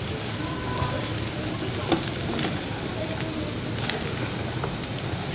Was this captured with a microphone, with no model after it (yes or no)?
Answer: no